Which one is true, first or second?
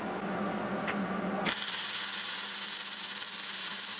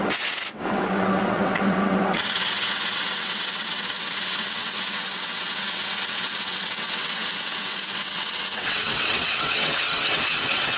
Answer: first